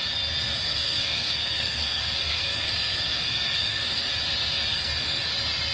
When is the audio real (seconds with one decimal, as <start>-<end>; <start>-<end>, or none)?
0.0-0.7; 4.1-4.7; 5.2-5.7